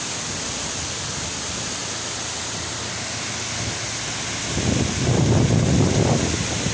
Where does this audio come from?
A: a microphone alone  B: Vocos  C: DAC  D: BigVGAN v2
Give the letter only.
A